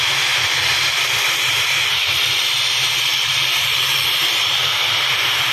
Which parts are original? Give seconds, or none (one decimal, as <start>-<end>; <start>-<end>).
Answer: 0.0-1.5; 2.1-3.3; 4.9-5.5